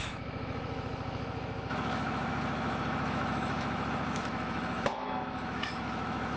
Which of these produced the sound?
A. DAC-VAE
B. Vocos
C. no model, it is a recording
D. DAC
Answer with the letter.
A